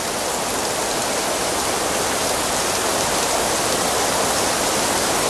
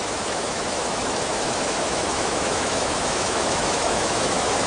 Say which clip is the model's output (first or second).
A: second